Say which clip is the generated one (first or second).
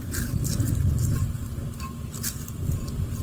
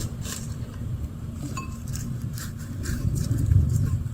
second